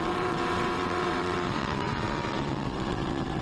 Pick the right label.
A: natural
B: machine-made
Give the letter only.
B